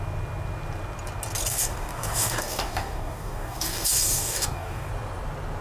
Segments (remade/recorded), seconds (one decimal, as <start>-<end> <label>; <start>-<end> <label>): 0.0-1.5 recorded; 1.5-4.9 remade; 4.9-5.6 recorded